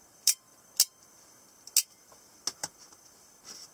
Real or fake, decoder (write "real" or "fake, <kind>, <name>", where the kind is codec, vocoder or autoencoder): real